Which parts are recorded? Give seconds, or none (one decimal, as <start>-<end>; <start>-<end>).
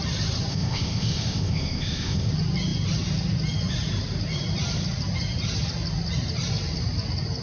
0.0-0.5; 2.3-7.4